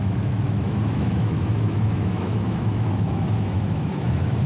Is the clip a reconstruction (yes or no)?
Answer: yes